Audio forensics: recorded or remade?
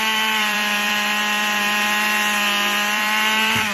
remade